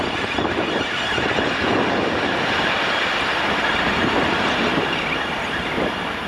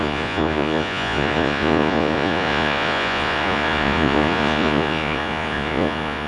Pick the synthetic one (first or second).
second